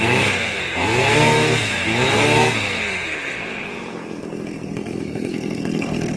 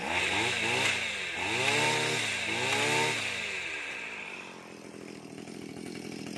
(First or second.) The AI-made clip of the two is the first